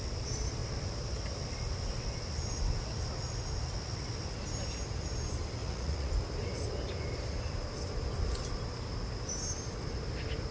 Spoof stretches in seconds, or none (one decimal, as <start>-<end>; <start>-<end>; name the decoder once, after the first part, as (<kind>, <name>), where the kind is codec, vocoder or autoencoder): 5.6-6.1 (vocoder, Vocos)